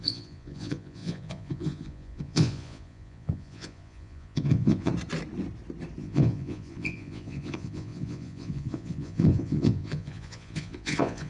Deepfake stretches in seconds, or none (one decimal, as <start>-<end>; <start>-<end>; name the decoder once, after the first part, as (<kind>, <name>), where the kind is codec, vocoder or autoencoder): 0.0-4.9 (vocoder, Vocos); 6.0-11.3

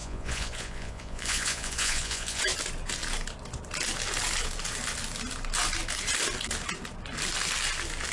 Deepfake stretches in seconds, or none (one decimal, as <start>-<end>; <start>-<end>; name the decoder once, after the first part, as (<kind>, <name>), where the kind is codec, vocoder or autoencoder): 0.0-2.4 (vocoder, Vocos)

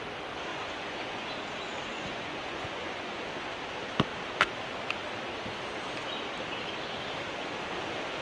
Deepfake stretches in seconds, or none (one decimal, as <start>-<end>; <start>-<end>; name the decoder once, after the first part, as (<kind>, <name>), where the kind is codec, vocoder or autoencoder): 0.5-1.3 (vocoder, Vocos); 1.9-3.2

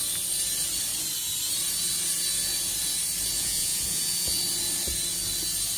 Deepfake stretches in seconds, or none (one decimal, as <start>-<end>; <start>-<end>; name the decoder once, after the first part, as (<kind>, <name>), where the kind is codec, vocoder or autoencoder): 3.4-4.0 (vocoder, Vocos)

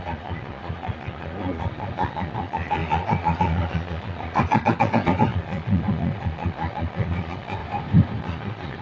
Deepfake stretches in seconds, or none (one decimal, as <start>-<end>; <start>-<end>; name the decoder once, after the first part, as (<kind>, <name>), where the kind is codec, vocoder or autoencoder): 0.0-7.6 (vocoder, Vocos); 8.2-8.8